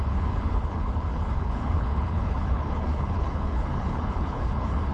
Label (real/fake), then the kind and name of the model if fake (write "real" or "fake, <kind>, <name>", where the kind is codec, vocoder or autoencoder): fake, codec, HILCodec